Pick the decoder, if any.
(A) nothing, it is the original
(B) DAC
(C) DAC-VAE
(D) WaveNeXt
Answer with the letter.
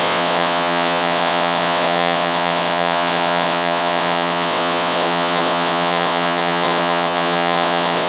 D